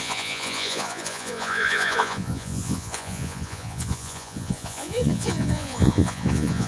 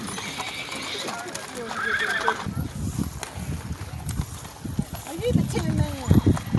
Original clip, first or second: second